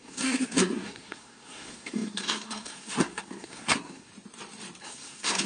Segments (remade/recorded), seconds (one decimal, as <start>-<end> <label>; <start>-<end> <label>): 0.0-4.1 remade; 4.1-4.8 recorded; 4.8-5.5 remade